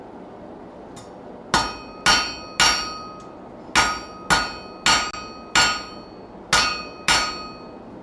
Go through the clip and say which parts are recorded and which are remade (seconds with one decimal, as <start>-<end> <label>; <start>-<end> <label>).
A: 0.0-8.0 recorded